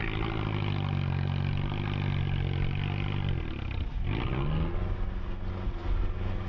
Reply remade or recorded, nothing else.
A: recorded